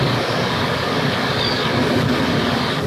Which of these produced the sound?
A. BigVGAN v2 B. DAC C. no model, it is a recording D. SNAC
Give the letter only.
B